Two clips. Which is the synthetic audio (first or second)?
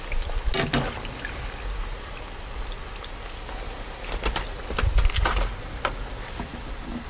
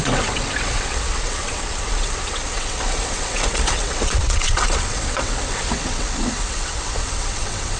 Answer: second